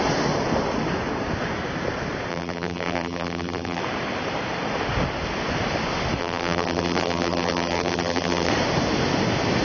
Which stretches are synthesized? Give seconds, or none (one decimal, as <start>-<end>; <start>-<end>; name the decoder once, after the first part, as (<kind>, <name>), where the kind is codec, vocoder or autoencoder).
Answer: 2.3-3.8 (vocoder, BigVGAN v2); 6.2-8.5

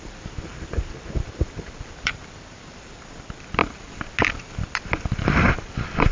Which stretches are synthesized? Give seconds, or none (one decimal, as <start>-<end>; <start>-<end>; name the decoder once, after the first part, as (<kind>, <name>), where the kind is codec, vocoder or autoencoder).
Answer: 0.0-3.6 (vocoder, BigVGAN v2); 4.6-6.1

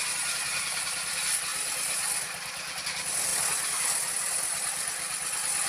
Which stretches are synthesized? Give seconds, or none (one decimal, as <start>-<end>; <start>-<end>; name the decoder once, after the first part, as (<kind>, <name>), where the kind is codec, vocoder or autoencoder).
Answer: 0.0-5.7 (vocoder, BigVGAN v2)

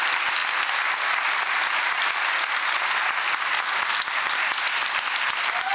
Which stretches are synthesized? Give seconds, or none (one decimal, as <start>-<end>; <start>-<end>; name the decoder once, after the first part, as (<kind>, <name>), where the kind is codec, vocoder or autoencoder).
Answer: none

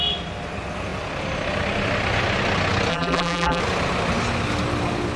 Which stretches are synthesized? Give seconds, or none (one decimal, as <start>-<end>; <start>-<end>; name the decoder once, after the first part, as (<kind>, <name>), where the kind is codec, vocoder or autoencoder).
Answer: 2.9-3.6 (vocoder, BigVGAN v2)

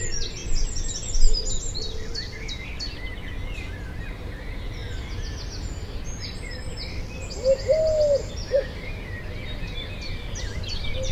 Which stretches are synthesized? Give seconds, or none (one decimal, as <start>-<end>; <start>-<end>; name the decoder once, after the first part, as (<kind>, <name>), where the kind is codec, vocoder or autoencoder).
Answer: none

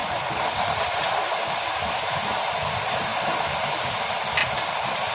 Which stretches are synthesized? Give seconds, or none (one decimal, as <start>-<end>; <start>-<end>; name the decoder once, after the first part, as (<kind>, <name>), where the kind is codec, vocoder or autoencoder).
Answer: 1.5-3.1 (vocoder, BigVGAN v2); 3.8-5.1

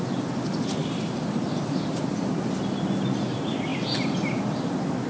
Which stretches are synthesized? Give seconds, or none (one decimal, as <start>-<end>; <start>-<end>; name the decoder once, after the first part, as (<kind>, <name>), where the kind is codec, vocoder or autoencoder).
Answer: 0.8-2.3 (vocoder, BigVGAN v2); 3.7-4.6